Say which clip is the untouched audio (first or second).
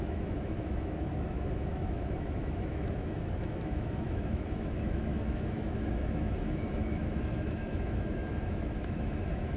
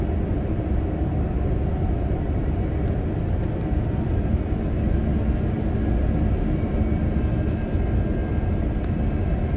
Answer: second